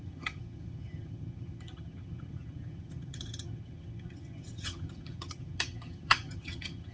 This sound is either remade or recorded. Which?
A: remade